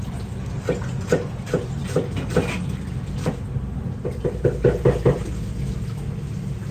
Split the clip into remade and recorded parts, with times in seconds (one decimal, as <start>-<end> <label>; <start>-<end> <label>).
0.0-6.7 recorded